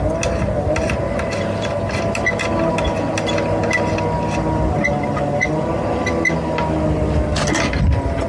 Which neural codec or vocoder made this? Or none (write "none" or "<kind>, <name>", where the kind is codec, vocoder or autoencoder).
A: none